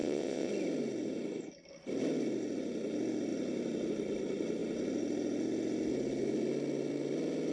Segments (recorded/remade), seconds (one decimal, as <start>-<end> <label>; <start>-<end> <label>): 0.0-0.5 remade; 0.5-7.5 recorded